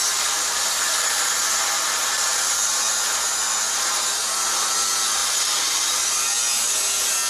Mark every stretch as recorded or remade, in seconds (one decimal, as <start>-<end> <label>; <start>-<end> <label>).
0.0-7.3 recorded